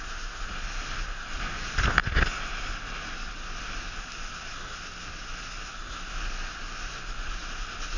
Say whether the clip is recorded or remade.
recorded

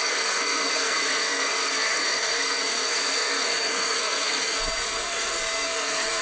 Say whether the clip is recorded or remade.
remade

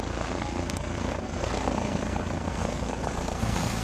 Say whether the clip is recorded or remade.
remade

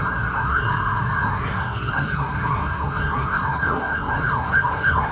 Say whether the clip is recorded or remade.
remade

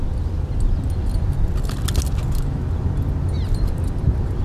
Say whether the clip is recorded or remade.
recorded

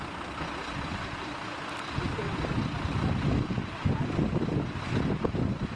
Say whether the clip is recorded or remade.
recorded